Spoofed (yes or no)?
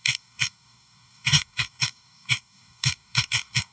yes